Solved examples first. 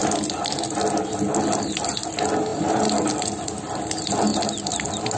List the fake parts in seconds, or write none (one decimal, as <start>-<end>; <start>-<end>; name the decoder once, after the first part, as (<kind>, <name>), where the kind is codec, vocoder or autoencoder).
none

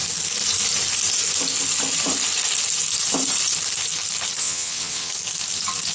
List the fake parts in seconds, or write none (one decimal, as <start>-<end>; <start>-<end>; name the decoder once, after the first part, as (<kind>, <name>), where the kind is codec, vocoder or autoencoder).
4.4-5.1 (vocoder, WaveNeXt)

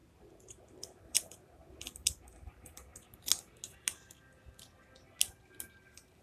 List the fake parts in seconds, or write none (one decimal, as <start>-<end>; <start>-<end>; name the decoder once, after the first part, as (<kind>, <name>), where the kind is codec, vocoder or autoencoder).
1.0-1.6 (vocoder, BigVGAN v2); 2.3-2.9; 5.8-6.2

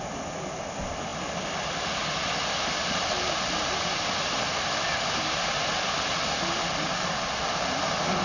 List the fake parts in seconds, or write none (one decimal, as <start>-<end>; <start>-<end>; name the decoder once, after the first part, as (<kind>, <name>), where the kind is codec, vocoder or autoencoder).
none

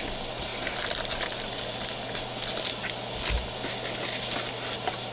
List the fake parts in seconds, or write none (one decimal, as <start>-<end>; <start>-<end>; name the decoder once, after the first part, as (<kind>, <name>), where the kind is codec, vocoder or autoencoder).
none

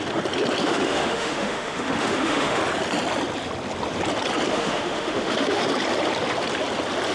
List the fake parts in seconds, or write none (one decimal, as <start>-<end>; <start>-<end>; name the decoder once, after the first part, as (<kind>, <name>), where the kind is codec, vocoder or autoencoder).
0.6-2.6 (autoencoder, DAC-VAE); 4.5-5.6